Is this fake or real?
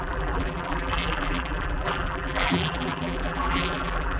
fake